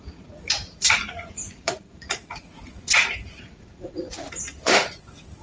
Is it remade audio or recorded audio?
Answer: remade